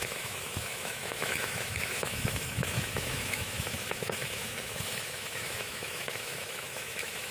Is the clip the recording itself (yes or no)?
no